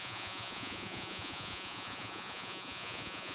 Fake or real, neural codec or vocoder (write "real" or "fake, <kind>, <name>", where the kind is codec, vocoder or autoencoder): fake, vocoder, Vocos